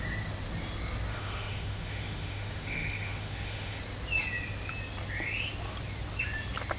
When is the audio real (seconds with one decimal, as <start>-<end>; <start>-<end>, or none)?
0.0-1.1; 3.8-6.8